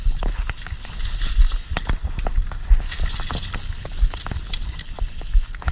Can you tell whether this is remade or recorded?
recorded